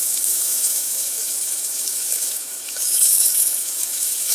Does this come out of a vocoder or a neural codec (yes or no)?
yes